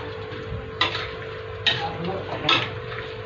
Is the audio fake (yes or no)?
yes